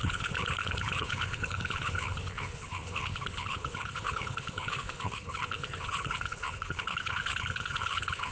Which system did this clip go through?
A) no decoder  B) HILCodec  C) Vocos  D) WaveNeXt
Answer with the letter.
B